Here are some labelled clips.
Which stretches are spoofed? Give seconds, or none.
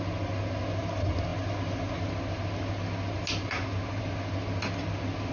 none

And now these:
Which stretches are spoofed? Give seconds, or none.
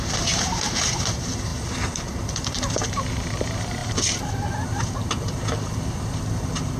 0.0-6.8 (vocoder, BigVGAN v2)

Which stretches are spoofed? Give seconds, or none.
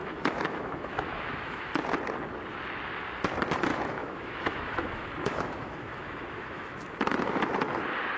0.0-1.7 (autoencoder, DAC-VAE); 3.7-7.4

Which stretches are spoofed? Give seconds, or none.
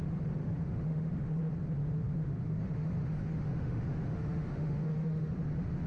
0.4-1.4 (autoencoder, DAC-VAE); 1.8-5.3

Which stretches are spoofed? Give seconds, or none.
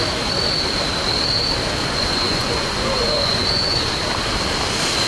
1.8-3.9 (vocoder, Vocos)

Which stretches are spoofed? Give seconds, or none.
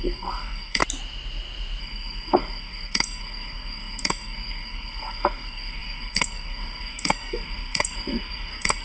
0.0-0.8 (codec, SNAC); 1.8-8.8